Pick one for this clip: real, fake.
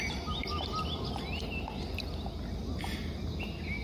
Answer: real